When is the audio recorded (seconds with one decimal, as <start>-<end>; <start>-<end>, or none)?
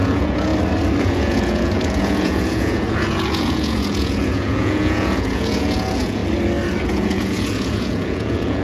0.5-1.0; 6.2-6.8